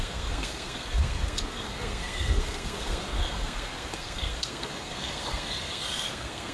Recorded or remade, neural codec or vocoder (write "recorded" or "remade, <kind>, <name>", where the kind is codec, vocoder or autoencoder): remade, codec, SNAC